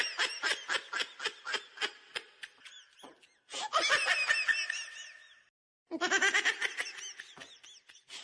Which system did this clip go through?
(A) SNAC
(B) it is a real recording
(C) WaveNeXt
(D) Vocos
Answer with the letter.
B